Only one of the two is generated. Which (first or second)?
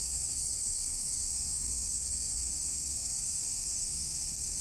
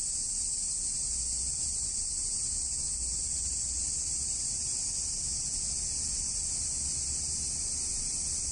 first